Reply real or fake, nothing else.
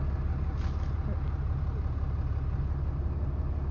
real